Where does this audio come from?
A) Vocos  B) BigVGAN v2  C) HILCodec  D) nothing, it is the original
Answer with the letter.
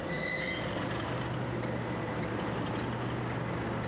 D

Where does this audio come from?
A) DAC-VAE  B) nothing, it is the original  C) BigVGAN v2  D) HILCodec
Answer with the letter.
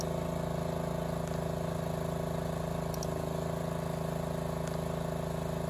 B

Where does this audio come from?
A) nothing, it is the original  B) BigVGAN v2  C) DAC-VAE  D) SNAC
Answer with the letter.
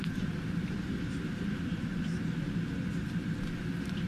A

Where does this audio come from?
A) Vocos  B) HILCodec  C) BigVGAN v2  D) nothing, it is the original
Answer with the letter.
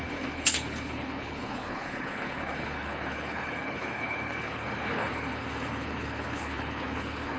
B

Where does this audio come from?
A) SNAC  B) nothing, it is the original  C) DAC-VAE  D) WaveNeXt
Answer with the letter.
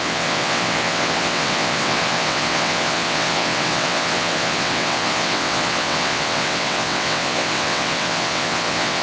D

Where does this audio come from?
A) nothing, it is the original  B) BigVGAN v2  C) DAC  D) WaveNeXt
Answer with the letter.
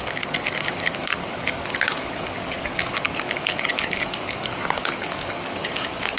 C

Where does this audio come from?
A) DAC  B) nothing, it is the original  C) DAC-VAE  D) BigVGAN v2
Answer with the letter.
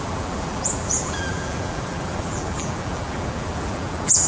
D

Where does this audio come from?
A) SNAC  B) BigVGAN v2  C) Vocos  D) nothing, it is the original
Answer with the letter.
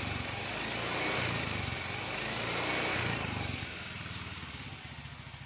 D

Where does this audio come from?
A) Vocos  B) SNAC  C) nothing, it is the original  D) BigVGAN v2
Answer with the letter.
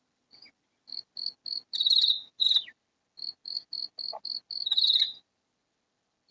C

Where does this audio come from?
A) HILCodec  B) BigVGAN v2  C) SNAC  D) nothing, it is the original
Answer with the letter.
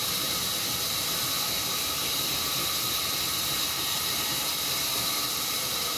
D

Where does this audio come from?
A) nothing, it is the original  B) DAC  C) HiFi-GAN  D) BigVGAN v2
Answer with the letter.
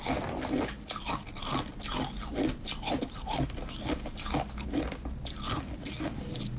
A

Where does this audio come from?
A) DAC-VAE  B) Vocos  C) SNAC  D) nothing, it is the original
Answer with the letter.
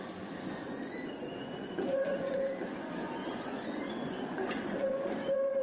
B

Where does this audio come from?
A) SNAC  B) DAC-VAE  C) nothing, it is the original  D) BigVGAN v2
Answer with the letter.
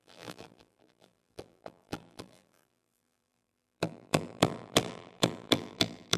D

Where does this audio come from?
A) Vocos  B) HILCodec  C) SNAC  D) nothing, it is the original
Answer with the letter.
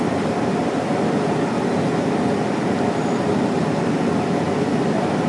D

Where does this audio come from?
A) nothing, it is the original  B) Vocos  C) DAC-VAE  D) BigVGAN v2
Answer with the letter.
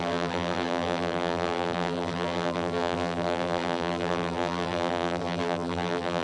D